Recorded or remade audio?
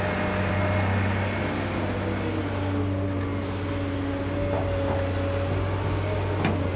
recorded